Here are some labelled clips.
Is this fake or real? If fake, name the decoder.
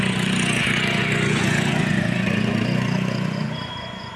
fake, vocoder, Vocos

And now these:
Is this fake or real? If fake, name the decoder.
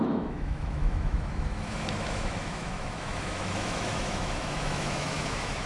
fake, autoencoder, DAC-VAE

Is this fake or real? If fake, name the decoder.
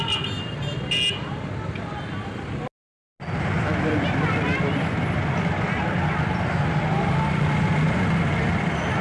real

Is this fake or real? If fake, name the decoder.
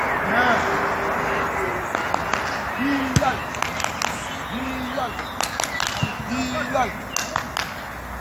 real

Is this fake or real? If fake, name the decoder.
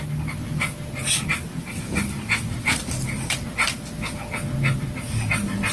real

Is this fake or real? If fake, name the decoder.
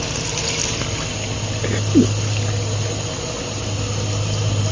real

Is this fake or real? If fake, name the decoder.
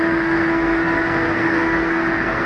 fake, codec, SNAC